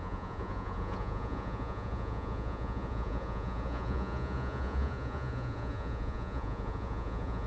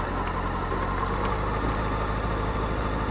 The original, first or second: second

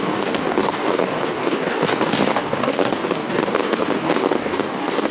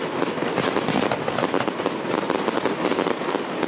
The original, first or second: second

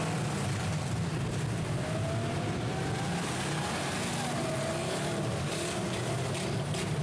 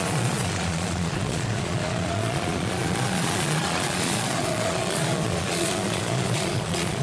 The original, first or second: first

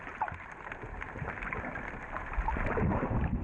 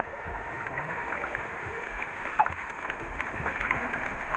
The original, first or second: first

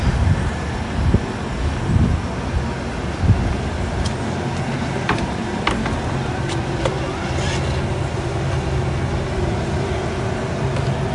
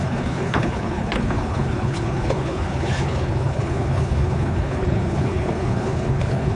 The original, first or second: first